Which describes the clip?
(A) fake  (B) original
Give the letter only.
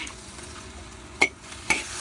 A